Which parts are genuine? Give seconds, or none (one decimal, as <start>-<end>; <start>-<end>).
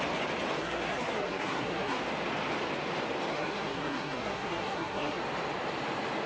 0.0-0.6; 2.0-3.3; 5.2-6.3